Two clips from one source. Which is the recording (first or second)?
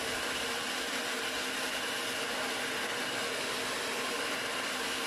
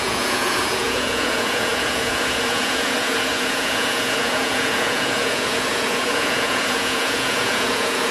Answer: first